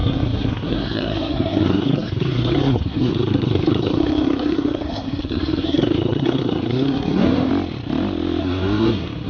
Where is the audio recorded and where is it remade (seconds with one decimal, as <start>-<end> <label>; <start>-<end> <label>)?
0.0-7.5 remade; 7.5-8.4 recorded; 8.4-9.3 remade